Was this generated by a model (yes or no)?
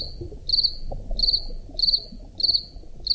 no